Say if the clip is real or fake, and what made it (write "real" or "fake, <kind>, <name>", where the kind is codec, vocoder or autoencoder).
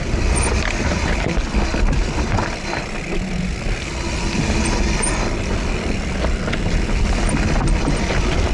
real